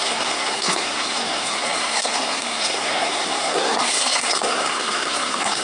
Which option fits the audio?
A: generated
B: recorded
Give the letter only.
A